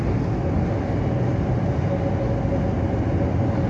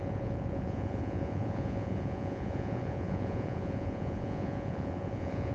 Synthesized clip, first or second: second